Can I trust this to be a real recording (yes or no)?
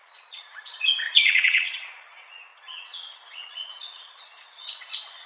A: no